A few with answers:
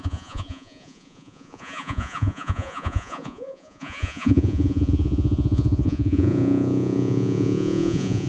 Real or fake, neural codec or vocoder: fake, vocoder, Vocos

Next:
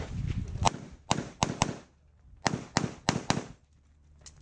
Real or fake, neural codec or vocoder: real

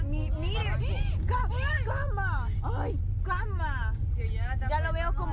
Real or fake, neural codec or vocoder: real